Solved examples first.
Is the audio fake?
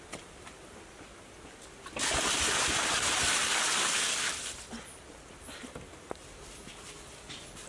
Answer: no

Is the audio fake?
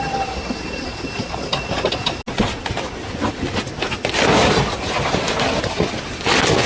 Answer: no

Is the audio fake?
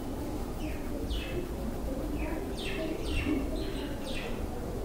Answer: yes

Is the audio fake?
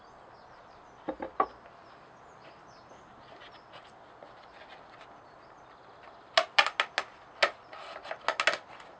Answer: no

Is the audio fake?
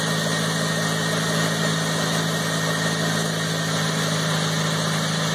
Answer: no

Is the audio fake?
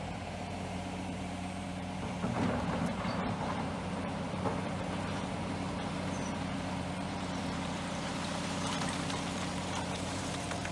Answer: yes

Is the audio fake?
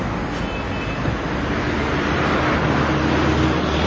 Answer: no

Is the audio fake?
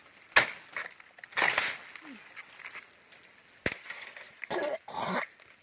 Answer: no